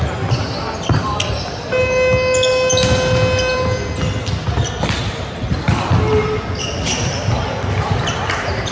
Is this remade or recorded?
recorded